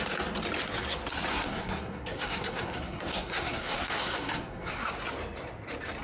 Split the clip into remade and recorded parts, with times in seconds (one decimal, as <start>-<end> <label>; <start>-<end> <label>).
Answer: 0.0-1.3 recorded; 1.3-4.9 remade; 4.9-6.0 recorded